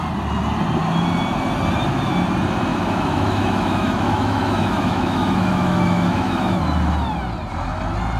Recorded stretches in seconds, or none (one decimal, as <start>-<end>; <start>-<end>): 0.0-2.7; 6.6-8.2